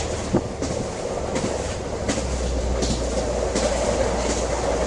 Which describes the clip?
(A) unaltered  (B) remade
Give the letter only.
A